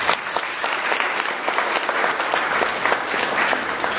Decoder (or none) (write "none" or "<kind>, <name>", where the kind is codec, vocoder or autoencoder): none